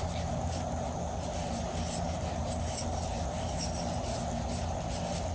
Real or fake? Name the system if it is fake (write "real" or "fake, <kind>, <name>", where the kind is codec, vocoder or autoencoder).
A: real